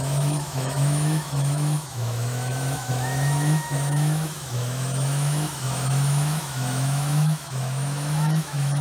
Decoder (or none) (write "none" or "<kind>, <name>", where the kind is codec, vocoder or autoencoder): autoencoder, DAC-VAE